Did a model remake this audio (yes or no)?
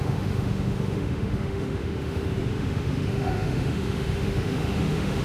yes